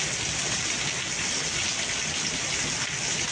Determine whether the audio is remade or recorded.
recorded